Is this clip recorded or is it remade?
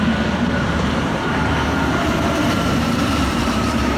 remade